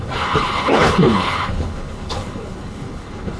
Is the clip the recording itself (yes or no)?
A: no